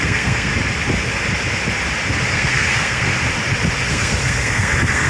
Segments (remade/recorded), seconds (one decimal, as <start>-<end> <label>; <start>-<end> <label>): 0.0-0.5 remade; 0.5-2.3 recorded; 2.3-3.1 remade; 3.1-3.9 recorded; 3.9-5.1 remade